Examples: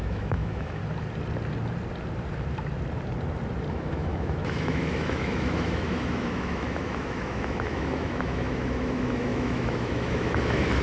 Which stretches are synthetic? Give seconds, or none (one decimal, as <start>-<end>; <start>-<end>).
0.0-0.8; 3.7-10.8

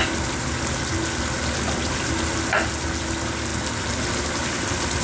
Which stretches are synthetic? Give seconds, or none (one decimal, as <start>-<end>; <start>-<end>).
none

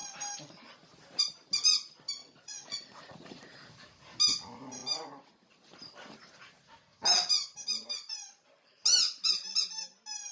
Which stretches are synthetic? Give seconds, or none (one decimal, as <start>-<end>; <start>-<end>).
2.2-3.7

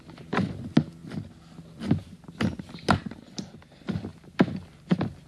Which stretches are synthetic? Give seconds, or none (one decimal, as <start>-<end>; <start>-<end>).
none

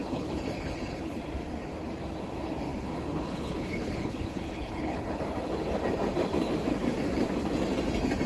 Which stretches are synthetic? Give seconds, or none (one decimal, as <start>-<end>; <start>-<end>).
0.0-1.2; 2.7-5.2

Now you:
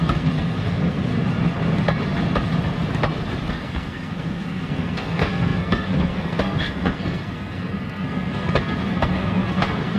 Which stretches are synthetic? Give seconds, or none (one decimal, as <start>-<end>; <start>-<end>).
0.0-1.1; 3.5-10.0